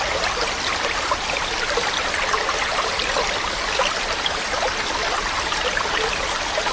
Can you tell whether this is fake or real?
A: fake